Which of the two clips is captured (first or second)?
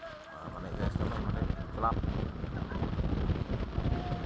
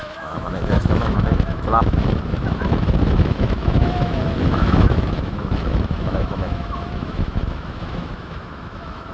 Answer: first